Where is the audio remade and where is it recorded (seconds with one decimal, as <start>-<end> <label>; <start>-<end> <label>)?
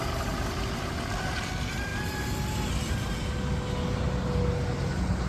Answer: 0.0-5.3 recorded